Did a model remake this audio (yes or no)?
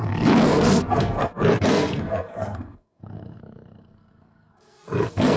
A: yes